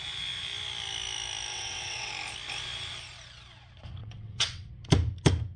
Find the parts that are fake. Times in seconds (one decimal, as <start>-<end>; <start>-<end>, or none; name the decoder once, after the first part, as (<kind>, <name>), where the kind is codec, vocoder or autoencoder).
1.5-2.1 (vocoder, WaveNeXt); 4.0-4.7